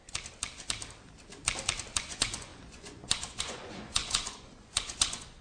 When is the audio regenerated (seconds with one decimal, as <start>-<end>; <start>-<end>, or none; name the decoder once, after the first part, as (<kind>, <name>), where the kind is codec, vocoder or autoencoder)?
2.0-5.4 (vocoder, Vocos)